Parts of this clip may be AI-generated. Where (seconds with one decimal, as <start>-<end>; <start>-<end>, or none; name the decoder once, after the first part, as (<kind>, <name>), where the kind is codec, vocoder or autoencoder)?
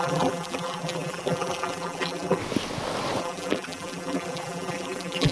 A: 0.0-2.4 (vocoder, BigVGAN v2); 3.2-5.3